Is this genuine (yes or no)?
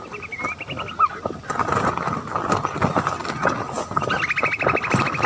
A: yes